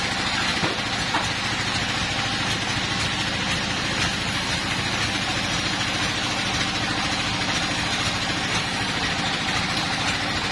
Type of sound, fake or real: real